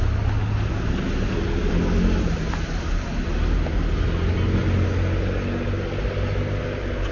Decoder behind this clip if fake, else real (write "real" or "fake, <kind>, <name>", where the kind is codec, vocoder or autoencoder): real